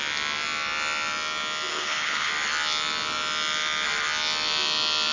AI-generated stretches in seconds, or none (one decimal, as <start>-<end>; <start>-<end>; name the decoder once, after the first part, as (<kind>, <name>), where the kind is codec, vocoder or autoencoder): 1.7-2.3 (codec, HILCodec)